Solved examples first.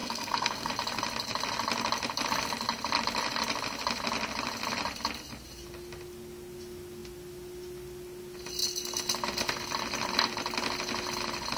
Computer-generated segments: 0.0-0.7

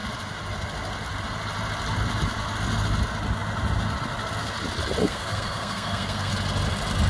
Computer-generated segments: 5.0-6.3

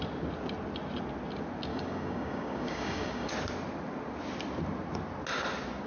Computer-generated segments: 1.7-3.3

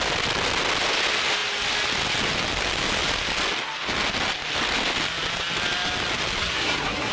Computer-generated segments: 6.4-7.1

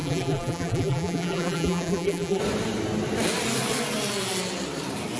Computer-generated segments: 0.0-2.4

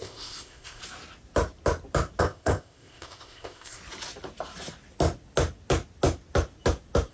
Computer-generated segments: 0.0-0.8; 2.2-3.8

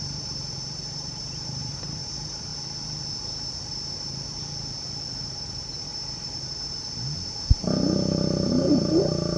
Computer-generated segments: 0.0-2.5; 5.2-5.9; 8.5-9.4